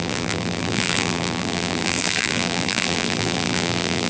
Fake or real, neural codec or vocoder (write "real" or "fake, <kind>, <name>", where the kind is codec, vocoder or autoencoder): fake, vocoder, BigVGAN v2